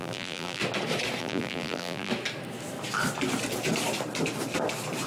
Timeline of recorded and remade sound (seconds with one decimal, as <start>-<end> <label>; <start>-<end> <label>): 0.0-0.6 remade; 0.6-1.2 recorded; 1.2-2.1 remade; 2.1-5.1 recorded